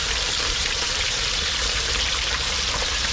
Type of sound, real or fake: fake